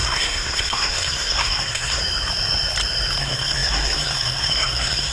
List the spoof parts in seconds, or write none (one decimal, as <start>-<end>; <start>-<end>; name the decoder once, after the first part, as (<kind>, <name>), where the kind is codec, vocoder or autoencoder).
0.0-2.0 (codec, SNAC); 3.2-5.1

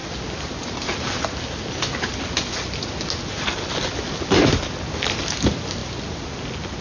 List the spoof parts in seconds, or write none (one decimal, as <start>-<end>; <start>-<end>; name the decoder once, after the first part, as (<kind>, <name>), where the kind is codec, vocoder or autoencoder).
none